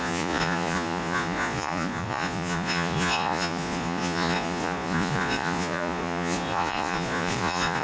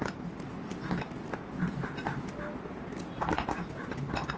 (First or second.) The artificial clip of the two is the first